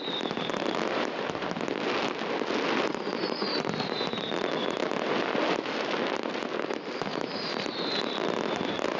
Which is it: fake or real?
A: real